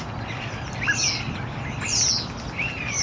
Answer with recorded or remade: recorded